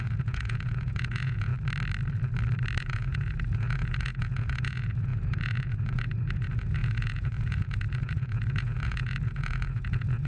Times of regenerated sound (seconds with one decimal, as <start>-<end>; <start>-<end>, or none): 0.0-1.5; 2.8-10.3